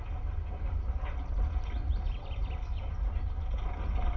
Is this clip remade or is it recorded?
recorded